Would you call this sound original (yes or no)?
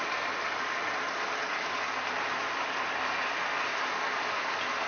yes